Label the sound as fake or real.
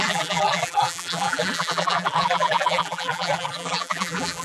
fake